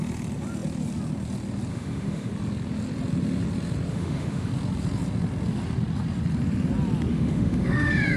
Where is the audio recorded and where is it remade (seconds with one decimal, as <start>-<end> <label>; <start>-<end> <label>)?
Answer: 0.0-1.7 recorded; 1.7-2.3 remade; 2.3-3.9 recorded; 3.9-4.5 remade; 4.5-7.1 recorded; 7.1-8.2 remade